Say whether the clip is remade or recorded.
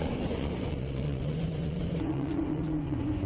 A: remade